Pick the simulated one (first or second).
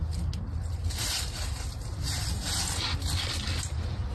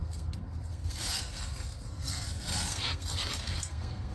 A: second